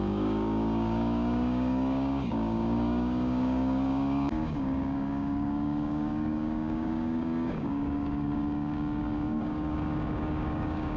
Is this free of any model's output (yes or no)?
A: no